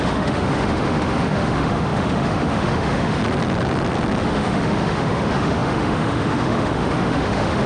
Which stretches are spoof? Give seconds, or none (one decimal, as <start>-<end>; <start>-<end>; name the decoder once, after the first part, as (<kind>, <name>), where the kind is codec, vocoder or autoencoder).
0.0-3.2 (autoencoder, DAC-VAE); 4.2-7.7